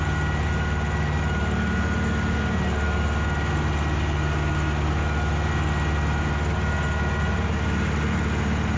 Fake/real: real